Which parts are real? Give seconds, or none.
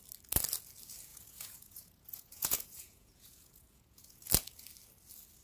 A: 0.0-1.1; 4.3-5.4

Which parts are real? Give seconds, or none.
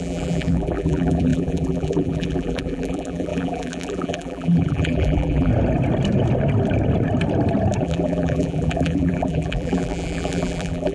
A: 5.5-7.8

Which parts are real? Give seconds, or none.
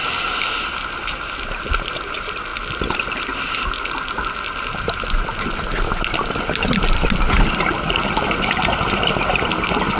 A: 0.0-10.0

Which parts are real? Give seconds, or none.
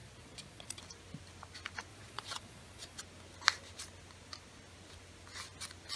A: 0.8-1.9; 3.0-6.0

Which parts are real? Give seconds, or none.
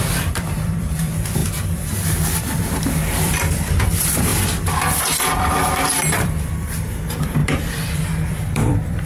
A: 1.4-2.4; 4.3-5.0